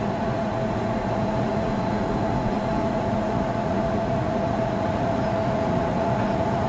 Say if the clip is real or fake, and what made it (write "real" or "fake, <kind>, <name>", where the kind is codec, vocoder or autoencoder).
fake, vocoder, Vocos